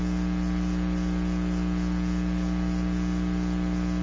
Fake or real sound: real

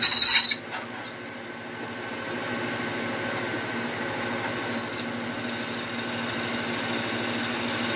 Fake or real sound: real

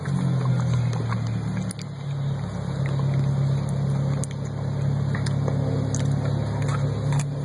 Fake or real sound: real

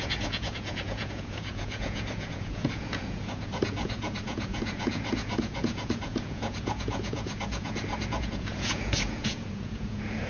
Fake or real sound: fake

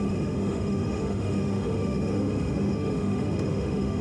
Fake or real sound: fake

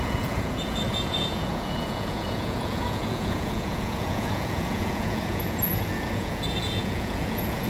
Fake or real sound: fake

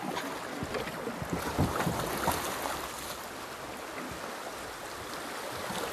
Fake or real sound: real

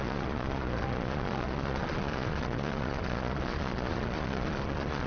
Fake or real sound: fake